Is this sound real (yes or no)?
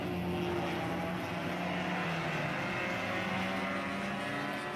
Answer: yes